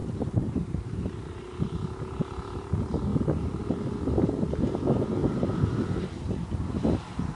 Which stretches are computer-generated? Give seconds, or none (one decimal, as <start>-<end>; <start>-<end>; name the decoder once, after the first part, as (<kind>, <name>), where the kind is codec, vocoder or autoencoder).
0.0-1.5 (vocoder, BigVGAN v2); 3.1-3.7; 5.2-6.0